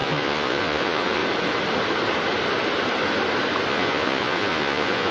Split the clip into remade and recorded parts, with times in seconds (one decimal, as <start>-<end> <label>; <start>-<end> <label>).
0.0-1.2 remade; 1.2-3.7 recorded; 3.7-5.1 remade